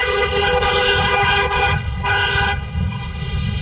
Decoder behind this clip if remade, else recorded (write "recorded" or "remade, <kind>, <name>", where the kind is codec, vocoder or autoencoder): remade, codec, HILCodec